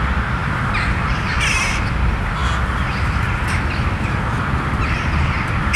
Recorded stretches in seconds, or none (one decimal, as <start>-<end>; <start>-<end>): 0.0-5.8